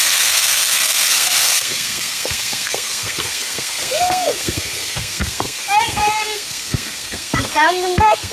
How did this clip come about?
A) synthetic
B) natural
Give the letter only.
A